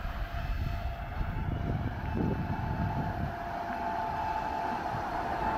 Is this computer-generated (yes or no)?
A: no